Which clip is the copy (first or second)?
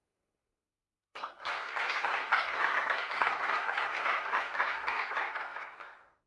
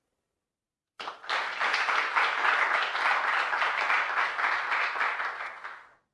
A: first